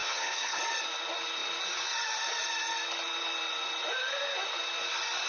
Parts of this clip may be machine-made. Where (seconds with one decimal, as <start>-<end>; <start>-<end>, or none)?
0.0-0.6